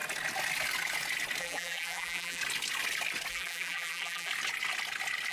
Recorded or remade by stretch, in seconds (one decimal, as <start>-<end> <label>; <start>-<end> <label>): 0.0-1.4 recorded; 1.4-2.4 remade; 2.4-3.3 recorded; 3.3-4.3 remade; 4.3-5.3 recorded